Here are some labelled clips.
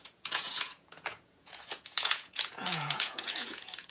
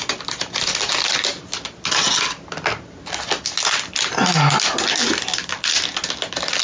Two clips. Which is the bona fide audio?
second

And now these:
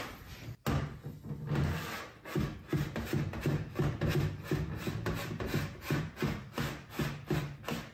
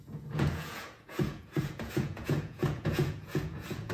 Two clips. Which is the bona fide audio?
first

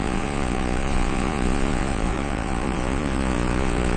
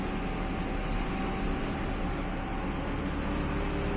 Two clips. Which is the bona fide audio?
second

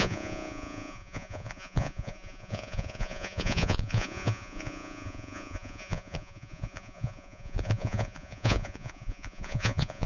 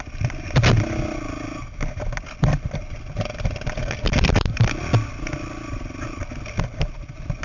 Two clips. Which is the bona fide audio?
second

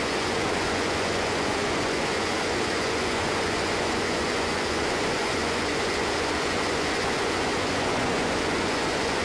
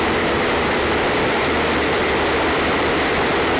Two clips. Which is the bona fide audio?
second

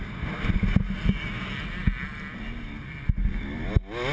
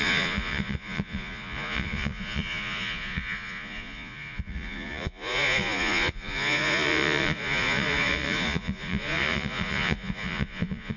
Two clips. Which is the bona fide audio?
first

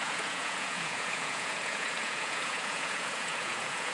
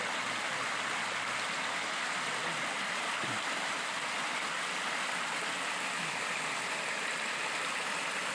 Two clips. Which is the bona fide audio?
second